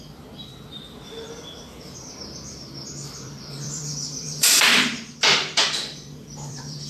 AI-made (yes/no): yes